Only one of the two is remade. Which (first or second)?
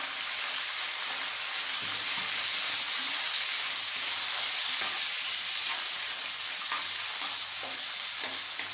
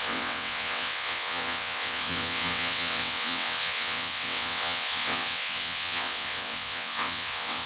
second